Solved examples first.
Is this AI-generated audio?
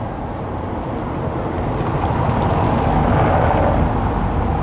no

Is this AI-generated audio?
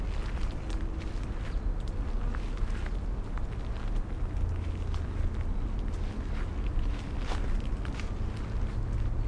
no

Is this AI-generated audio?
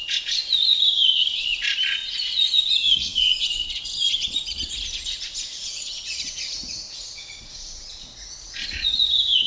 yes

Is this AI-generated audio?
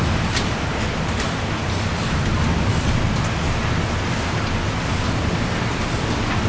no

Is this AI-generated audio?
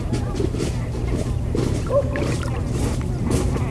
no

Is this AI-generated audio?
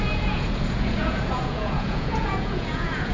yes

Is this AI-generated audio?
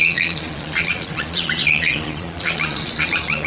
yes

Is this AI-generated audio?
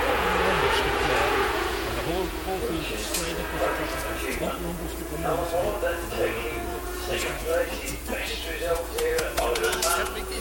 yes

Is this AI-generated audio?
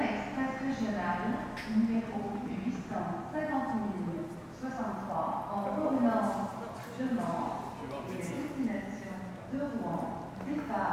no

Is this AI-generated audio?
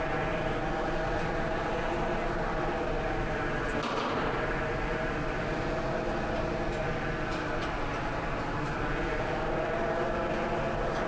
no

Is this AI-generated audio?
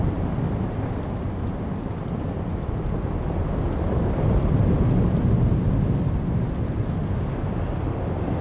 no